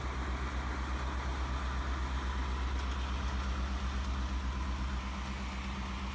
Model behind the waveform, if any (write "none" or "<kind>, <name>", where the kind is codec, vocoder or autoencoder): none